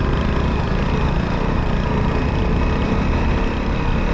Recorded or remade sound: remade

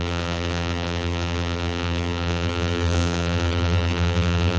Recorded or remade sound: remade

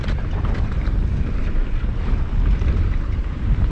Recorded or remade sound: remade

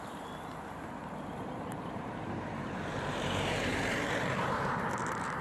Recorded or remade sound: remade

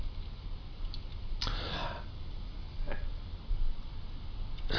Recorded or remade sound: recorded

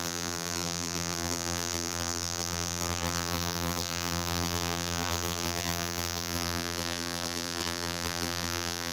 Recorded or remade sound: remade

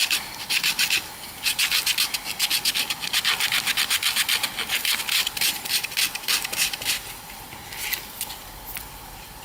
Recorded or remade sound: recorded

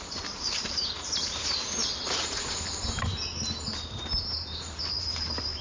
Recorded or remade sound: remade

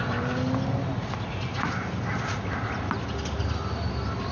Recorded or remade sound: recorded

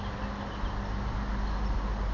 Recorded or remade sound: recorded